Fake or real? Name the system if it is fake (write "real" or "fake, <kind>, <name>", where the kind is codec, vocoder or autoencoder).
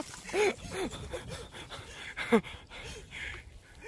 real